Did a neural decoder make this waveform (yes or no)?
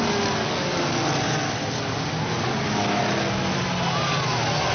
no